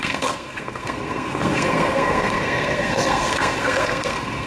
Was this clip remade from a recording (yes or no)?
yes